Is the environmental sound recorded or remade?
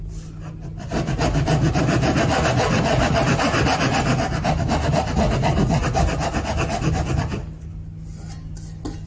recorded